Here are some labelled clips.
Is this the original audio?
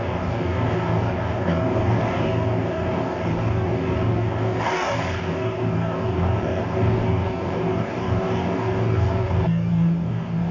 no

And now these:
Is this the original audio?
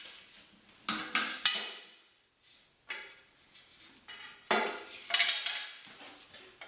yes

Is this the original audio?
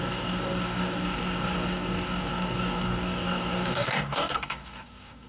no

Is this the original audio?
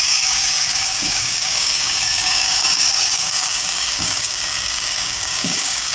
no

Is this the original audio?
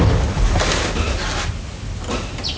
yes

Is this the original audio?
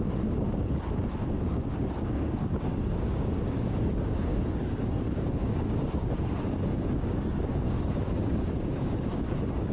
no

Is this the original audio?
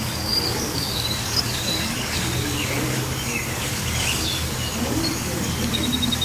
no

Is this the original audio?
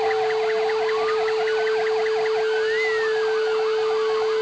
yes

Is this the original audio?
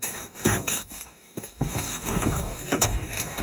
no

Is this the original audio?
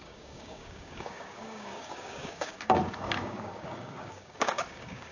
no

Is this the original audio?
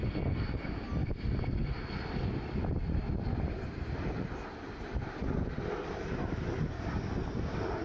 yes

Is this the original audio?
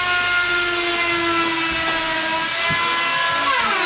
yes